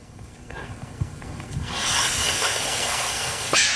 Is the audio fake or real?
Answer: fake